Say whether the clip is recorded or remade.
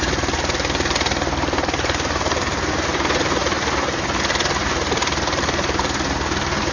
recorded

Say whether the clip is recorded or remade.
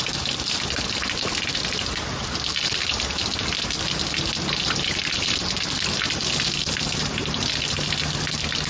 recorded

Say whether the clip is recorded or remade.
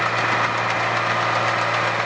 recorded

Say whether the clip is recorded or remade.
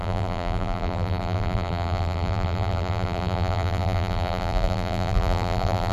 remade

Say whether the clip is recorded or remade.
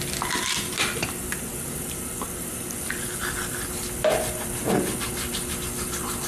recorded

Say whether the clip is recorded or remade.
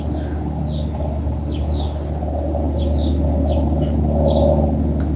recorded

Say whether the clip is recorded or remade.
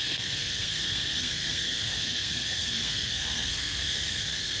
remade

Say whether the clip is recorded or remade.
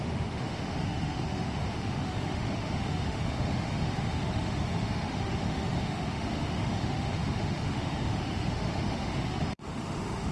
remade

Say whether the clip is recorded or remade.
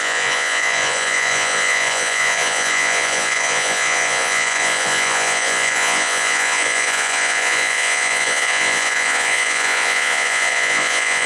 remade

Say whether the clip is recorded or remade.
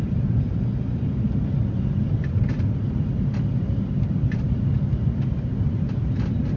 recorded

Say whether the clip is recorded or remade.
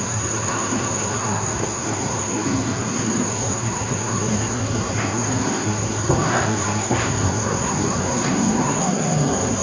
remade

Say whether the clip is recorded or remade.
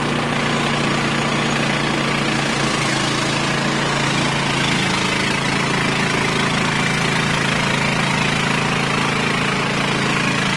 recorded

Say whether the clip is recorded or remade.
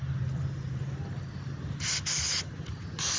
recorded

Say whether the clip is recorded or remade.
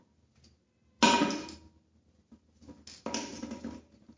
recorded